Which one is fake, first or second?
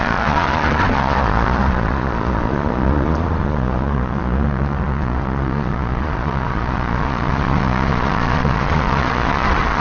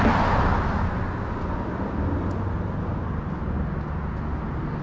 first